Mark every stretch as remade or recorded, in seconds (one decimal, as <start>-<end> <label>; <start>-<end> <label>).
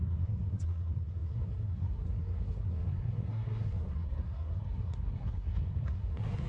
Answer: 0.0-6.5 remade